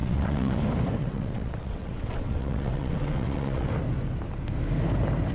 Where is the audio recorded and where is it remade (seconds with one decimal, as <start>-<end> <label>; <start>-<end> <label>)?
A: 0.0-0.6 remade; 0.6-1.0 recorded; 1.0-3.7 remade; 3.7-5.3 recorded